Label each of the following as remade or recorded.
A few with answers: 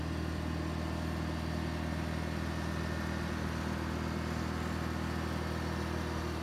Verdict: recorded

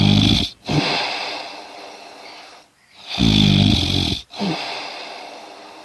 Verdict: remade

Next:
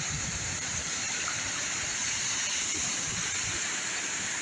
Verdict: remade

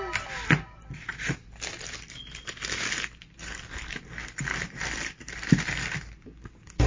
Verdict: remade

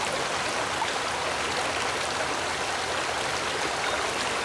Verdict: recorded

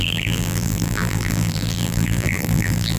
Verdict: remade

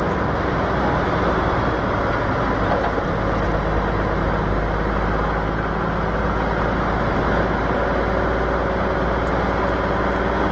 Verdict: recorded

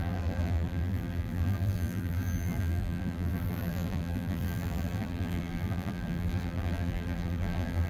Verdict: remade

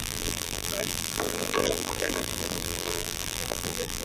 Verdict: remade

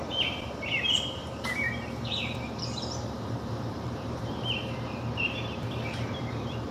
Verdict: remade